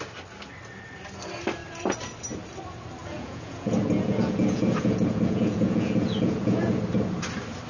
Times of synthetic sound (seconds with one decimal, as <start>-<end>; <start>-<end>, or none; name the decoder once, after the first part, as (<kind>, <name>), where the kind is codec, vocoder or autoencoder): 3.0-6.8 (vocoder, Vocos)